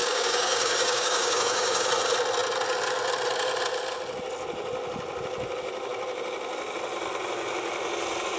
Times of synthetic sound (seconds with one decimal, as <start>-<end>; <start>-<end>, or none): 0.0-1.9